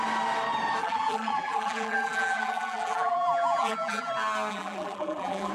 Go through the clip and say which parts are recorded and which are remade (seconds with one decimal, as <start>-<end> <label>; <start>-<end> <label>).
0.0-0.8 recorded; 0.8-4.1 remade; 4.1-4.5 recorded; 4.5-5.5 remade